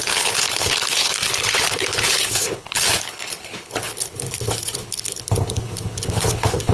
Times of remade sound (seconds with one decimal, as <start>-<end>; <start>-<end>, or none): 0.0-6.7